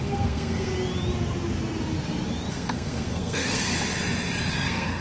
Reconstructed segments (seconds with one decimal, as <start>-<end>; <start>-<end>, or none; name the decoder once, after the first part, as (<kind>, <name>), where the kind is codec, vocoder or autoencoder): 0.0-0.7 (codec, SNAC); 2.5-3.7; 4.5-5.0